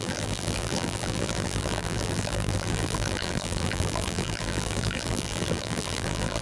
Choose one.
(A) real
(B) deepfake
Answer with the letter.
B